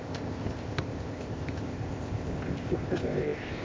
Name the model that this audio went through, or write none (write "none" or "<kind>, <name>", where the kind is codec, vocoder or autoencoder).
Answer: codec, ZipCodec